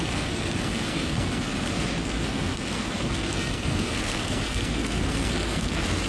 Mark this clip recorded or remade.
remade